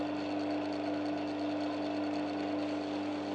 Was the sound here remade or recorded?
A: recorded